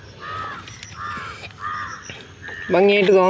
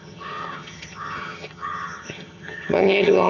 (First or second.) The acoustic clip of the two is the first